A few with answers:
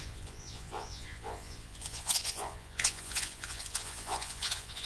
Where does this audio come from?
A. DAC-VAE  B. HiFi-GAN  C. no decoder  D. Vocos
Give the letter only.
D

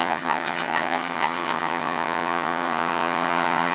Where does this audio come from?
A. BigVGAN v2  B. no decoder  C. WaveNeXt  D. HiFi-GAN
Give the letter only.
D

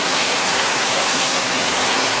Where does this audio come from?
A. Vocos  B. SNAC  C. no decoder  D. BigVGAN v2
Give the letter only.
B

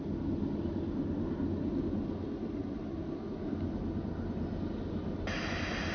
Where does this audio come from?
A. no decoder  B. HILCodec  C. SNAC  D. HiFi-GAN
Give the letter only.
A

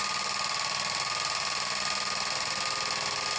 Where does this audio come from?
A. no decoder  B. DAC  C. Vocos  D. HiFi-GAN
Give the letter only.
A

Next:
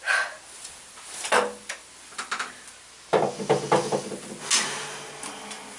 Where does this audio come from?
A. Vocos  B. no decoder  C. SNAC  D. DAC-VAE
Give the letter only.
B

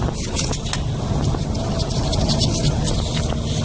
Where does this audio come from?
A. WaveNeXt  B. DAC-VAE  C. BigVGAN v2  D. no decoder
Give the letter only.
D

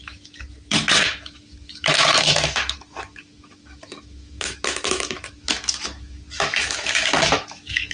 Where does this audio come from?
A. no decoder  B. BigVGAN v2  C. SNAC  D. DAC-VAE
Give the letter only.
D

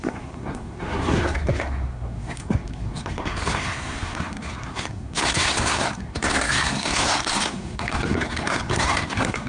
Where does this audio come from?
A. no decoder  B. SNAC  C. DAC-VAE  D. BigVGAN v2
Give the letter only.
B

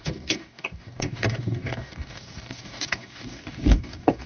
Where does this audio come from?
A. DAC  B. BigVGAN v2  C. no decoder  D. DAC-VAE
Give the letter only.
A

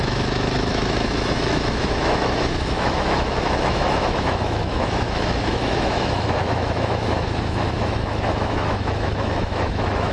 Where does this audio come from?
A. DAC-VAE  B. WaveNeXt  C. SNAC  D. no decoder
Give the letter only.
A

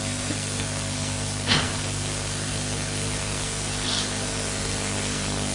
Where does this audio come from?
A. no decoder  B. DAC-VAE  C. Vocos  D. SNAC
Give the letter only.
D